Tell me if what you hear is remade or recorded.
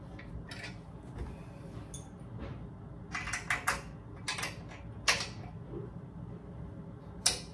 recorded